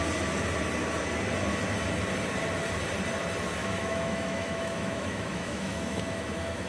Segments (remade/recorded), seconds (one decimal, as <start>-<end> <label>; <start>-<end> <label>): 0.0-3.6 recorded; 3.6-6.7 remade